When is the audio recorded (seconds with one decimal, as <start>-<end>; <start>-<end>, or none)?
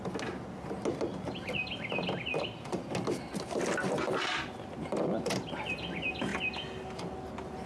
0.0-7.7